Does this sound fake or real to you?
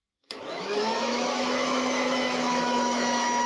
fake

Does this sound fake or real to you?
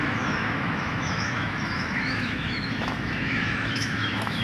fake